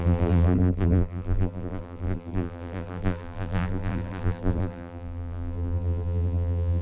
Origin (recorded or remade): remade